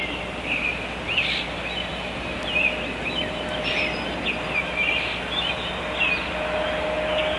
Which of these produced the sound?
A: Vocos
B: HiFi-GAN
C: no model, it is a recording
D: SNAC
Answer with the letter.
C